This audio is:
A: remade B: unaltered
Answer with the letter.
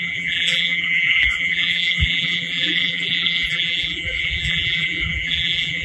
A